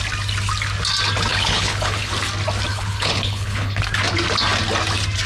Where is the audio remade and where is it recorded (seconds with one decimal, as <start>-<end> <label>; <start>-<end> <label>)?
0.0-1.3 recorded; 1.3-2.1 remade; 2.1-2.7 recorded; 2.7-3.8 remade; 3.8-5.3 recorded